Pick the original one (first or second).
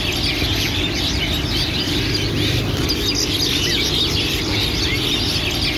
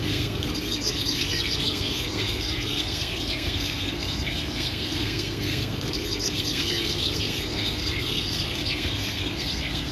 first